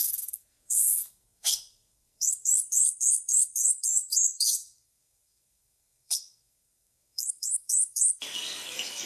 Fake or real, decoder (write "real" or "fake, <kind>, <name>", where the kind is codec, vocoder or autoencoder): fake, codec, SNAC